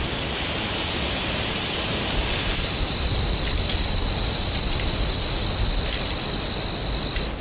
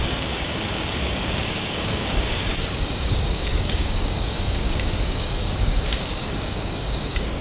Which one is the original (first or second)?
first